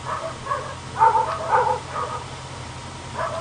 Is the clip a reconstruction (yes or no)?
no